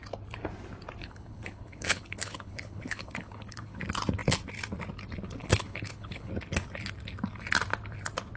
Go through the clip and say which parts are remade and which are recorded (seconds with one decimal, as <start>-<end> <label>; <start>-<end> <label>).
0.0-1.0 recorded; 1.0-3.8 remade; 3.8-5.4 recorded; 5.4-6.3 remade; 6.3-8.4 recorded